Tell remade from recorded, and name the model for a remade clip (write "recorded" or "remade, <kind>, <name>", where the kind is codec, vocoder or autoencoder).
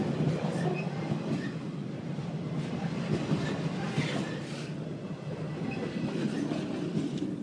recorded